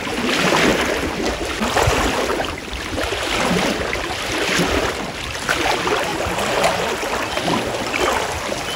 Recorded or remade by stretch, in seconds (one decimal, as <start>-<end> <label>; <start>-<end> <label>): 0.0-0.7 recorded; 0.7-1.5 remade; 1.5-2.3 recorded; 2.3-3.9 remade; 3.9-8.8 recorded